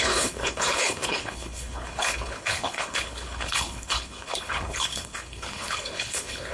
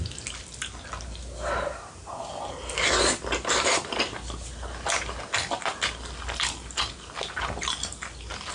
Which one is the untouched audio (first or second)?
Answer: second